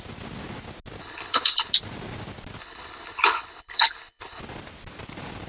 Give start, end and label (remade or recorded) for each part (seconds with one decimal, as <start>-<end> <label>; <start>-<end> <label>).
0.0-1.0 recorded; 1.0-1.7 remade; 1.7-2.6 recorded; 2.6-4.4 remade; 4.4-5.5 recorded